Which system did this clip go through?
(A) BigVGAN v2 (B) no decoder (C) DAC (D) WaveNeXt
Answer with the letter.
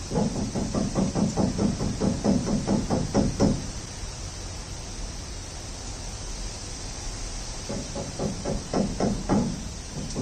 A